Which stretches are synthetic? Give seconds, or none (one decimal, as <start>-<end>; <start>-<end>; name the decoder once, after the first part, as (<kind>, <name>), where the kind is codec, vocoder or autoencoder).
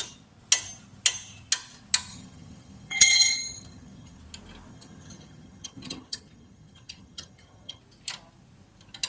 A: 2.1-4.2 (vocoder, HiFi-GAN); 4.7-7.8